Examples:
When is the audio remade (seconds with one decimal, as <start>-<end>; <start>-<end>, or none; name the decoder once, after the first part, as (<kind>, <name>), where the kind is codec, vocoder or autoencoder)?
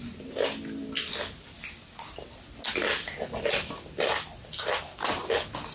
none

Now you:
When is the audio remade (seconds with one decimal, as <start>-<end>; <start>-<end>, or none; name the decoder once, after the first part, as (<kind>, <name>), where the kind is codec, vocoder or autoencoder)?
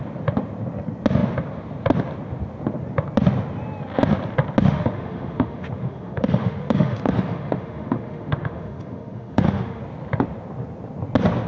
4.6-9.8 (autoencoder, DAC-VAE)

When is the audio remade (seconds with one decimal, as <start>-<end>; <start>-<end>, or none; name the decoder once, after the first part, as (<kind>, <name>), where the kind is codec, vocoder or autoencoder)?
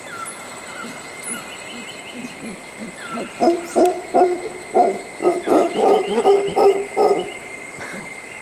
5.6-7.4 (autoencoder, DAC-VAE)